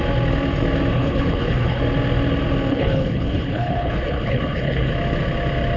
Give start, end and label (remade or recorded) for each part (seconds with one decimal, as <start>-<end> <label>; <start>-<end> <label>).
0.0-0.9 recorded; 0.9-1.8 remade; 1.8-2.7 recorded; 2.7-4.9 remade; 4.9-5.8 recorded